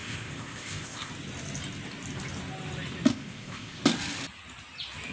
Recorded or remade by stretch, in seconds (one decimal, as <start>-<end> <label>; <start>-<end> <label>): 0.0-1.1 remade; 1.1-3.1 recorded; 3.1-3.8 remade; 3.8-5.1 recorded